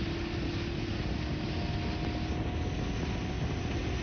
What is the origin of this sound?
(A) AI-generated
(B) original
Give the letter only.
B